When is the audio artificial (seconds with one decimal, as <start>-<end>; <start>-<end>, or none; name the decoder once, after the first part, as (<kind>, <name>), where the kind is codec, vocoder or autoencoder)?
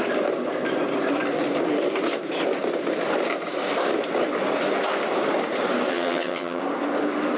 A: 5.9-6.6 (vocoder, HiFi-GAN)